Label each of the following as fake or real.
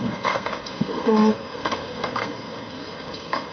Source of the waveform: fake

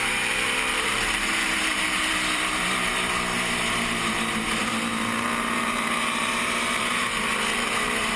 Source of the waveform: fake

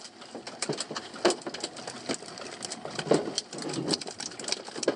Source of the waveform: real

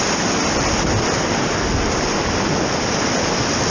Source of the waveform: real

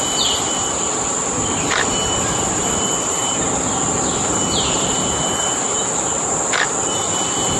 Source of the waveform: real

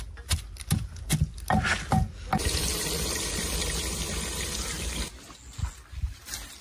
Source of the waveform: real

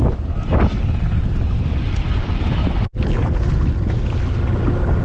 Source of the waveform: real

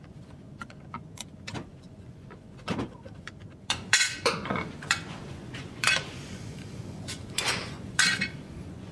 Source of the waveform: fake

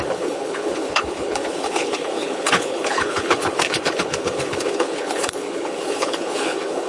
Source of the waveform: fake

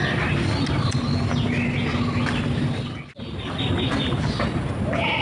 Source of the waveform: real